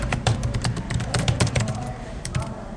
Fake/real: fake